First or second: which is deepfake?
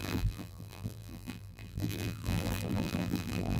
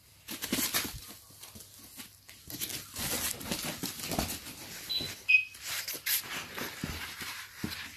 first